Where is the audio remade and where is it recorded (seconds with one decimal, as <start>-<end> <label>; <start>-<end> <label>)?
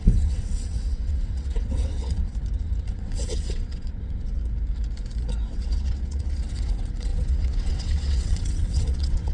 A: 0.0-2.3 remade; 2.3-2.9 recorded; 2.9-4.4 remade; 4.4-5.5 recorded; 5.5-9.3 remade